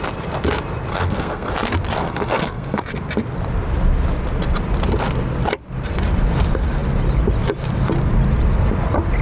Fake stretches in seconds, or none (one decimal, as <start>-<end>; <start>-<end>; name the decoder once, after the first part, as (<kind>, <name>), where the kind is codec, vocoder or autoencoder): 0.9-1.5 (codec, SNAC); 2.0-2.8